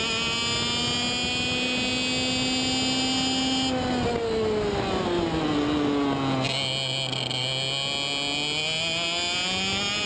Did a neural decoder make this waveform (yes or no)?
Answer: no